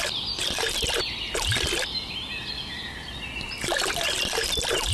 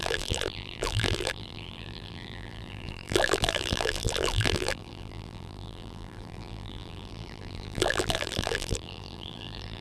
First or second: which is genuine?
first